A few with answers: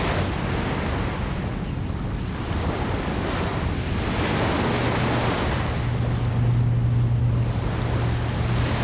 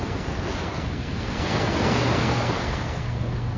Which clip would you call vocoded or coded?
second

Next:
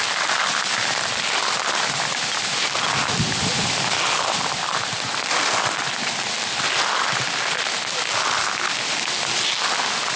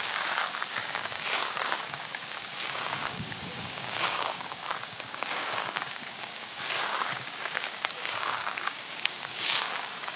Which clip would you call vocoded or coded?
second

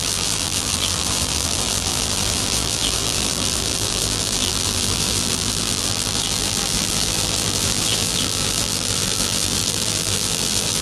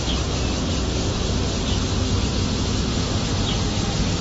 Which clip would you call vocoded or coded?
first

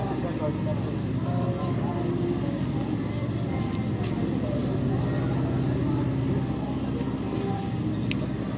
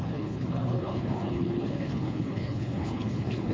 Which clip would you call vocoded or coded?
second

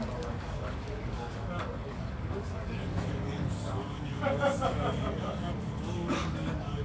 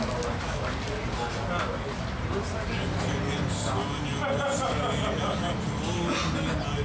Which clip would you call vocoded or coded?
first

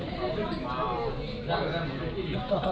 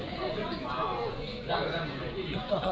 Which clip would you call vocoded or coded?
second